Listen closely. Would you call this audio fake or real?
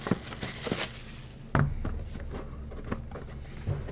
real